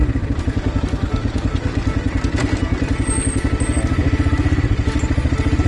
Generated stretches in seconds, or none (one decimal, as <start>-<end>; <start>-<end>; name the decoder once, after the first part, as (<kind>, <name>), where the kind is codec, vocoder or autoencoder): none